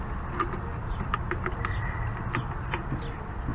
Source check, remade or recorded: recorded